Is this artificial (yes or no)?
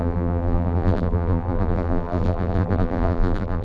yes